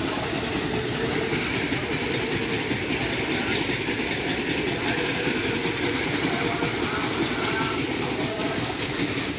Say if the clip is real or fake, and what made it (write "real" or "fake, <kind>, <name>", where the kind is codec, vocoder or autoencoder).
real